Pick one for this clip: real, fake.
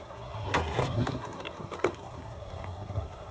fake